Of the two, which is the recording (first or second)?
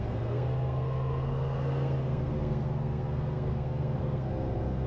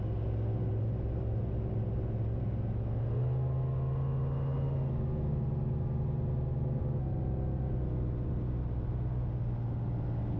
second